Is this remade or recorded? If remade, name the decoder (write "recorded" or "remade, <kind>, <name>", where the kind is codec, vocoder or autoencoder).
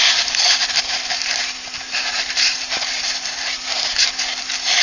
remade, vocoder, BigVGAN v2